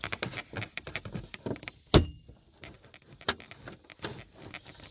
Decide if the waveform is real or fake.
real